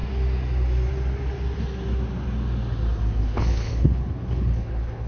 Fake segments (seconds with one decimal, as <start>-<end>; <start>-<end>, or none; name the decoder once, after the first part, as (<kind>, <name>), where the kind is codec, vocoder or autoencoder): 3.2-5.1 (codec, HILCodec)